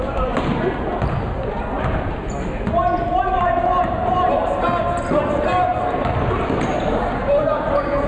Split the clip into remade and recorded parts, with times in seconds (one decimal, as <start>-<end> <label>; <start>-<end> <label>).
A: 0.0-8.1 recorded